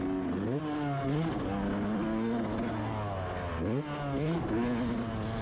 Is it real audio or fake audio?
real